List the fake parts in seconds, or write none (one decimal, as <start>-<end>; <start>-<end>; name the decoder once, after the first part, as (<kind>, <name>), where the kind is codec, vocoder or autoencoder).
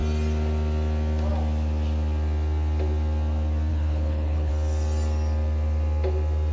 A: 3.7-4.5 (codec, HILCodec)